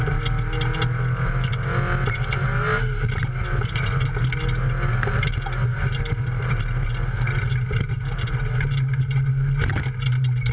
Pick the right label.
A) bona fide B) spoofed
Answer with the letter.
A